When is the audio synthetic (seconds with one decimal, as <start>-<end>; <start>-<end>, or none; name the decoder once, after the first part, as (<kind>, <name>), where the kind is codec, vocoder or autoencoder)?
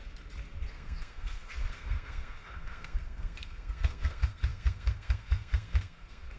0.7-6.4 (codec, SNAC)